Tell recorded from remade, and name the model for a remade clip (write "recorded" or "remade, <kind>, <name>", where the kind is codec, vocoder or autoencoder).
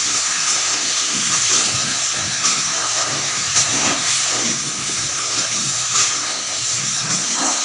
remade, codec, SNAC